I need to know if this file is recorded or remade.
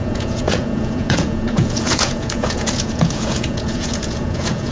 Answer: remade